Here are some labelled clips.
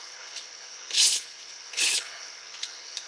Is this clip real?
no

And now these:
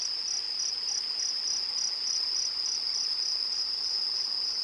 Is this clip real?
yes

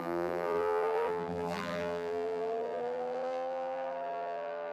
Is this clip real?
no